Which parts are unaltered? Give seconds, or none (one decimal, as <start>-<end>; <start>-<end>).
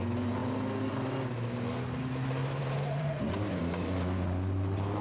0.0-2.4; 3.2-5.0